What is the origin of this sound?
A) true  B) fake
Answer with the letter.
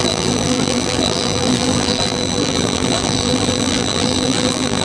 B